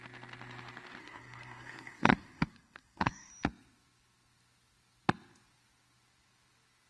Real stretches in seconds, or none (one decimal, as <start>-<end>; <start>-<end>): 0.0-1.0; 3.3-6.9